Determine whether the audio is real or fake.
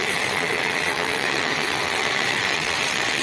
fake